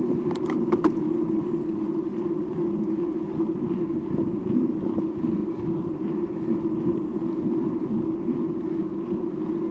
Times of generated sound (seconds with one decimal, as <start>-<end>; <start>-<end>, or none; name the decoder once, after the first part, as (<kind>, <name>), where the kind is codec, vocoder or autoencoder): none